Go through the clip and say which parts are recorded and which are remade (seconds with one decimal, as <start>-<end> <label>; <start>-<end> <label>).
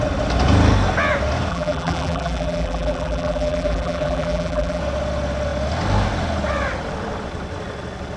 0.0-1.5 recorded; 1.5-4.8 remade; 4.8-8.2 recorded